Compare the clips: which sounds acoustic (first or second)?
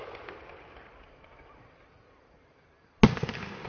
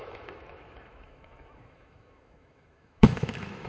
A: first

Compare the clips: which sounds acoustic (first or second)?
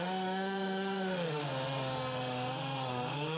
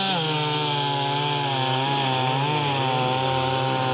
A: second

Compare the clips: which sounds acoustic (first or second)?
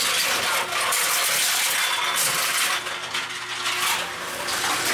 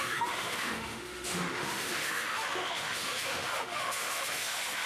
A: first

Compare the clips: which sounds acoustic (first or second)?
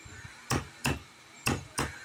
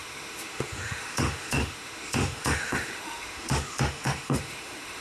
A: first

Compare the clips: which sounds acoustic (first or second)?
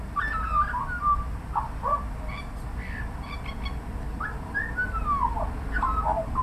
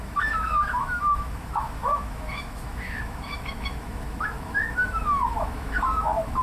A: first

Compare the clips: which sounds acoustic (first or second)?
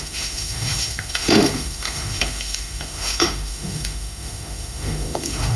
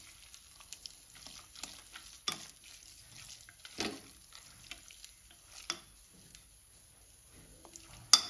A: second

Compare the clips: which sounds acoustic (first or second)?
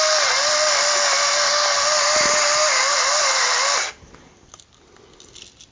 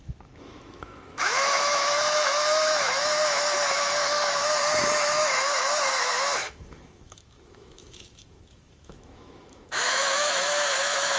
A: first